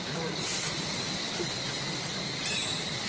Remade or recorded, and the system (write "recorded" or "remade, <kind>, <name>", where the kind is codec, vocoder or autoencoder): remade, vocoder, BigVGAN v2